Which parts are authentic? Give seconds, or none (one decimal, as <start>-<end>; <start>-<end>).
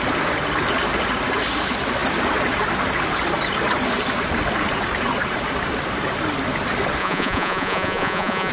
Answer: 0.0-7.0